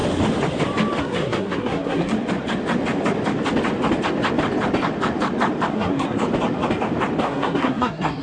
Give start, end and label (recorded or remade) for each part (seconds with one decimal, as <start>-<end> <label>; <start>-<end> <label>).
0.0-1.0 recorded; 1.0-2.1 remade; 2.1-5.7 recorded; 5.7-6.2 remade; 6.2-7.2 recorded; 7.2-8.2 remade